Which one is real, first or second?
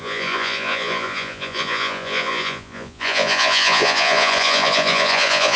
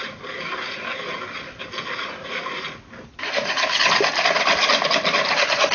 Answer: second